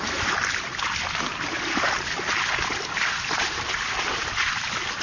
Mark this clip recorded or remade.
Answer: recorded